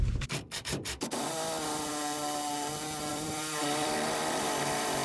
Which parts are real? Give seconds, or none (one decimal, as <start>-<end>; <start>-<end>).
1.9-3.1